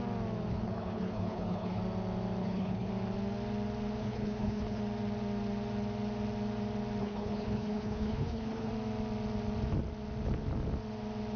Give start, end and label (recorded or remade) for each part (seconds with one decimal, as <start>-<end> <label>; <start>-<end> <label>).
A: 0.0-0.5 recorded; 0.5-1.8 remade; 1.8-2.4 recorded; 2.4-2.9 remade; 2.9-4.0 recorded; 4.0-4.8 remade; 4.8-7.0 recorded; 7.0-8.7 remade; 8.7-11.4 recorded